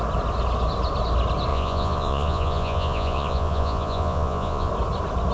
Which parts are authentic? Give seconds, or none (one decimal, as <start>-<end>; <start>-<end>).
0.0-1.5; 4.7-5.3